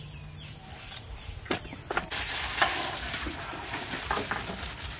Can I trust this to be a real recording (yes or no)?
yes